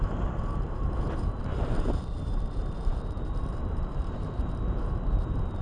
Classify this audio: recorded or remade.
remade